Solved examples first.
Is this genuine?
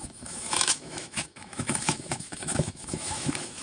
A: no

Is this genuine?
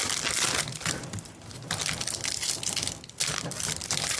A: yes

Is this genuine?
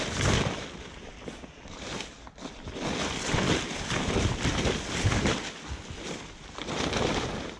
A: yes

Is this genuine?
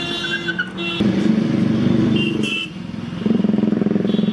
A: yes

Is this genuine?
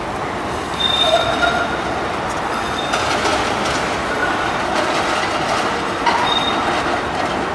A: yes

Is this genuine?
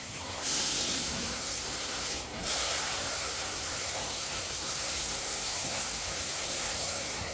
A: no